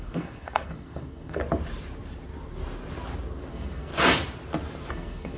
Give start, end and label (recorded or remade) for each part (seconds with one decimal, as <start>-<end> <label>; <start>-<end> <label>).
0.0-1.4 remade; 1.4-3.5 recorded; 3.5-3.9 remade; 3.9-4.9 recorded; 4.9-5.4 remade

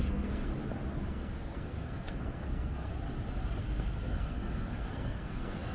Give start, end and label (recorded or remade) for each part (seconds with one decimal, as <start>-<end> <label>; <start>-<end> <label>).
0.0-0.5 remade; 0.5-1.1 recorded; 1.1-2.9 remade; 2.9-3.6 recorded; 3.6-5.7 remade

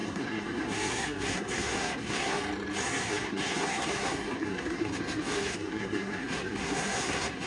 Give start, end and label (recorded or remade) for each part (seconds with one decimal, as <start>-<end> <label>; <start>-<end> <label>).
0.0-2.4 remade; 2.4-2.8 recorded; 2.8-7.5 remade

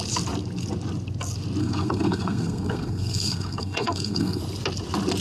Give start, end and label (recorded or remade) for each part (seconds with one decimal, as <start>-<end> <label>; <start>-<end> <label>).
0.0-1.6 recorded; 1.6-4.4 remade; 4.4-5.2 recorded

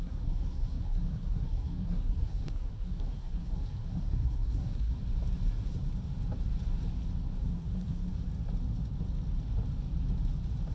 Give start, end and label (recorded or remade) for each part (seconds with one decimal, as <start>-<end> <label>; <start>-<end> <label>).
0.0-4.9 remade; 4.9-7.4 recorded; 7.4-8.1 remade; 8.1-10.7 recorded